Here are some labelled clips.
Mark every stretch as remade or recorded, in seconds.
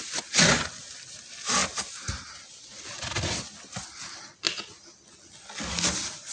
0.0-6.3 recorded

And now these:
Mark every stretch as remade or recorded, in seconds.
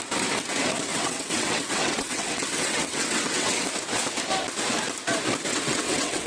0.0-0.9 recorded; 0.9-3.7 remade; 3.7-5.5 recorded; 5.5-6.3 remade